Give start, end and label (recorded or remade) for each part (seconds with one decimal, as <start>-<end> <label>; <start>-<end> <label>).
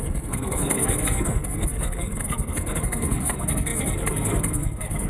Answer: 0.0-5.1 remade